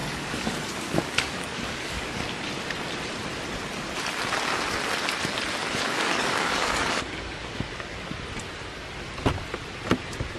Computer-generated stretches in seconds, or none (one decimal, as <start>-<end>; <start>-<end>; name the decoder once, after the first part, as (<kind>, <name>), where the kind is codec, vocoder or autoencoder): 0.0-2.2 (codec, DAC); 5.6-8.1